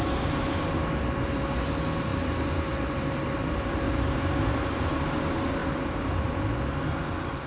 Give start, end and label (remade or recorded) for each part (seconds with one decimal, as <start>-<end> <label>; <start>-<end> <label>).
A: 0.0-2.1 recorded; 2.1-3.9 remade; 3.9-5.6 recorded; 5.6-6.4 remade; 6.4-7.5 recorded